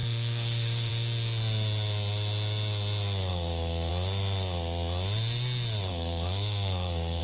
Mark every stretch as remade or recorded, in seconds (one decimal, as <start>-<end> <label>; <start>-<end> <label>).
0.0-0.9 remade; 0.9-3.3 recorded; 3.3-3.9 remade; 3.9-5.9 recorded; 5.9-7.2 remade